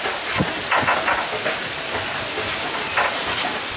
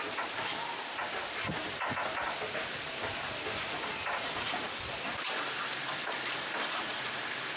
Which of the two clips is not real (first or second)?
second